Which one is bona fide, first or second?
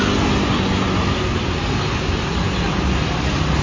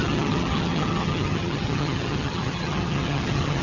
first